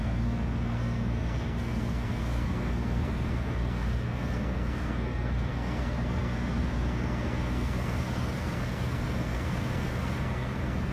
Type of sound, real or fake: fake